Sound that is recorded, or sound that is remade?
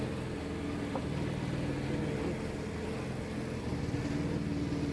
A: recorded